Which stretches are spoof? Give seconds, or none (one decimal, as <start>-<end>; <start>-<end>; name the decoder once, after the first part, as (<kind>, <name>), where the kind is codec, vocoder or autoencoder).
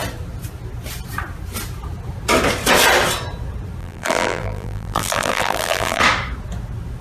3.8-6.0 (vocoder, BigVGAN v2)